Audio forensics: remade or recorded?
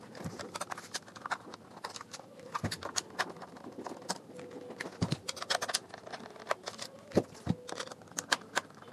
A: recorded